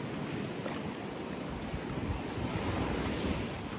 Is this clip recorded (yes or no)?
yes